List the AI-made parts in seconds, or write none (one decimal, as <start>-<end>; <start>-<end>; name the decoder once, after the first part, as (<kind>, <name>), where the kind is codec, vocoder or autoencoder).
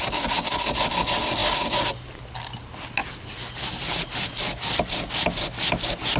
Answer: none